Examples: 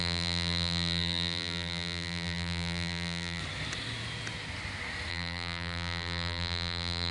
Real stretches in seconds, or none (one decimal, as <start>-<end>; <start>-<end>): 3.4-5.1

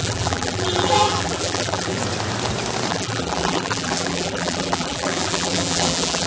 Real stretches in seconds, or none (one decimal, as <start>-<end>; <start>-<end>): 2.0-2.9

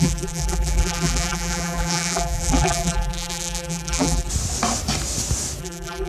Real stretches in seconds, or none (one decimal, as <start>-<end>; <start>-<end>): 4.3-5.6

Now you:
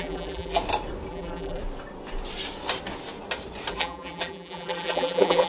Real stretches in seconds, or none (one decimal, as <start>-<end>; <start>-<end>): 0.6-1.1; 1.6-3.7

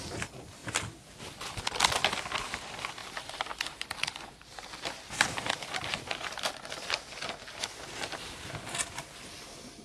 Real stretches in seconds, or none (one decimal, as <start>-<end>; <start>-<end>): 0.0-3.0; 5.5-9.8